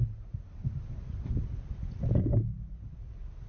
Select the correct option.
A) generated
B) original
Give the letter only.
B